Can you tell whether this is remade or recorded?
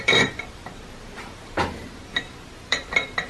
remade